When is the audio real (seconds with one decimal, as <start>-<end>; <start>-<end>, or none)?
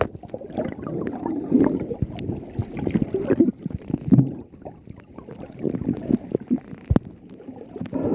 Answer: 0.0-8.1